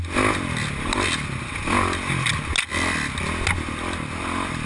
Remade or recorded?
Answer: recorded